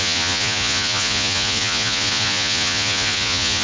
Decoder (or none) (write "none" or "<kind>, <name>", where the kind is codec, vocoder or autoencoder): vocoder, Vocos